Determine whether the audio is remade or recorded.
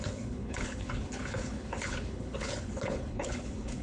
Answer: remade